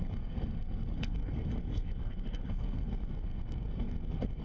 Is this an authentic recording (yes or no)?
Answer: no